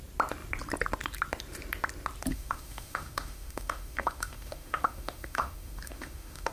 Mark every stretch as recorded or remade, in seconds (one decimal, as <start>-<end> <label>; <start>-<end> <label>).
0.0-2.3 recorded; 2.3-6.5 remade